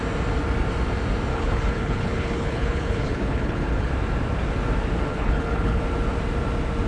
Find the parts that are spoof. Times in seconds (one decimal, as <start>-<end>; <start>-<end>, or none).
1.3-3.9; 5.1-5.8